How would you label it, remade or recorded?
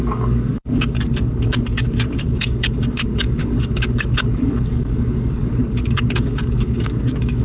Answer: remade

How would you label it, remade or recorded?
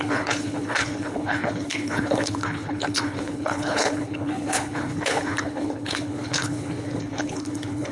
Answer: remade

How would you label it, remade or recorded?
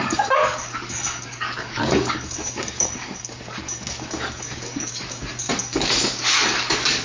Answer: remade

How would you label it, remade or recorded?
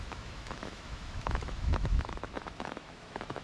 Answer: remade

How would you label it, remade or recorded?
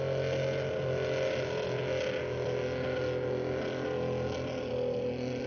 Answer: recorded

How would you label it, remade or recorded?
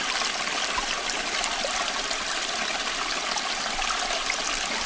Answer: recorded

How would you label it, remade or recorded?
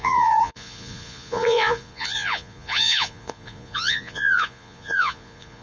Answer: remade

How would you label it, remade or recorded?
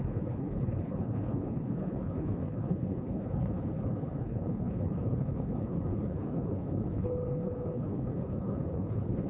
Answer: remade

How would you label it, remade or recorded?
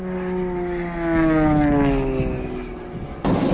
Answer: recorded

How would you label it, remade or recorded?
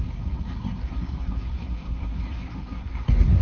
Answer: remade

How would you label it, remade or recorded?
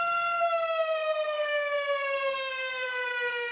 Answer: remade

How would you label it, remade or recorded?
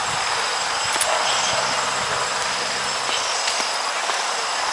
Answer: recorded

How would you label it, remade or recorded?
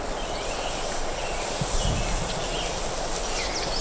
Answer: recorded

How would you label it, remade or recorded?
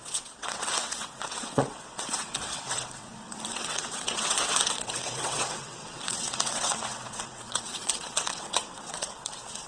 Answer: remade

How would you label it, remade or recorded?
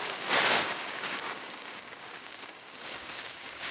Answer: remade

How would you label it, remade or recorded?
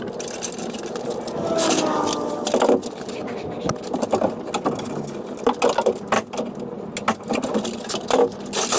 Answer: recorded